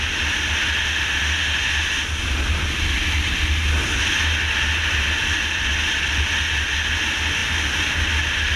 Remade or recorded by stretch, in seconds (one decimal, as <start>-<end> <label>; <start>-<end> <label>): 0.0-0.8 recorded; 0.8-1.6 remade; 1.6-8.6 recorded